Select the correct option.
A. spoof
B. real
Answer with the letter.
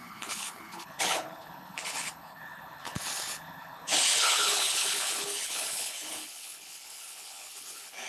A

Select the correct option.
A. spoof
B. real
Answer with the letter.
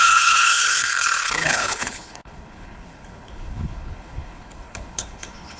A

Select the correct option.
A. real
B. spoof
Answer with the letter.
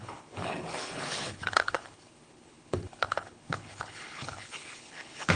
B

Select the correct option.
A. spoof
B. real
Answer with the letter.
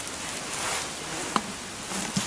B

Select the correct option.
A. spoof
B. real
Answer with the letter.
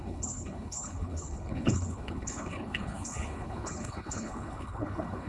A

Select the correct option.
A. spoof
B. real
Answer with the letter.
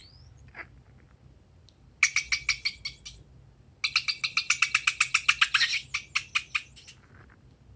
B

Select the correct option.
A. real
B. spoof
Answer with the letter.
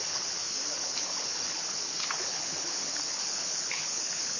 B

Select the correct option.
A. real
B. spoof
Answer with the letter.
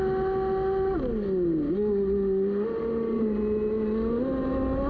A